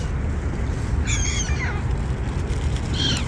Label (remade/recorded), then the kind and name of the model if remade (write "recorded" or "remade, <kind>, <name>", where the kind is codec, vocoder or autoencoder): recorded